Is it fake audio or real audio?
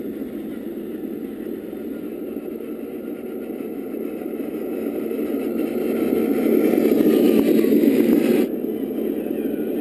real